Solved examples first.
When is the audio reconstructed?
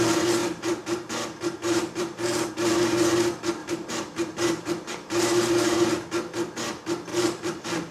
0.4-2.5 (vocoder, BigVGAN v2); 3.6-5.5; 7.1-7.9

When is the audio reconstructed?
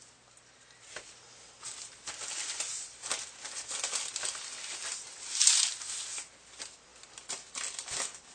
none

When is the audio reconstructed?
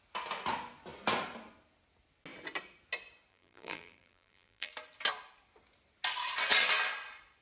3.3-4.7 (vocoder, BigVGAN v2)